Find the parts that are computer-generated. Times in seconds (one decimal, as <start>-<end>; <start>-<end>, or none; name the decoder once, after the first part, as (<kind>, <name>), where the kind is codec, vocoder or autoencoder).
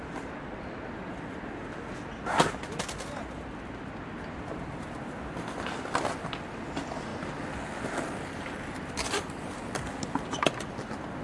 none